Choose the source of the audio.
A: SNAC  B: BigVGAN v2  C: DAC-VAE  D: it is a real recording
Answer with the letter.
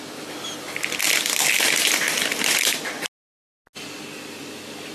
D